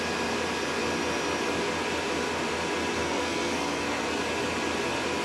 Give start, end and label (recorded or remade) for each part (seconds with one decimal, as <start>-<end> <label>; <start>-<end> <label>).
0.0-3.0 recorded; 3.0-4.2 remade; 4.2-5.2 recorded